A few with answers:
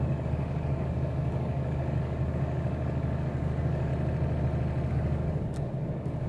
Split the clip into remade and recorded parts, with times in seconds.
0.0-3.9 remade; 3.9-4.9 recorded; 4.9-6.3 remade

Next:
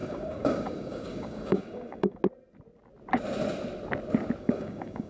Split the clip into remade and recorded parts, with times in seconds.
0.0-2.2 remade; 2.2-4.4 recorded; 4.4-5.1 remade